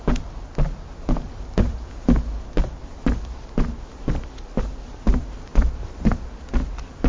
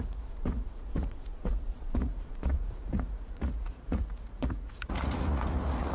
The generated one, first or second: second